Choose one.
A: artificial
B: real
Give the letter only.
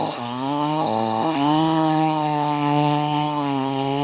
A